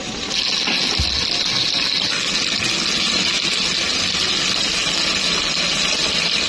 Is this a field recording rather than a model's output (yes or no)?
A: yes